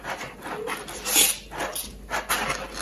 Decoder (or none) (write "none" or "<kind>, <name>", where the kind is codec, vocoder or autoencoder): none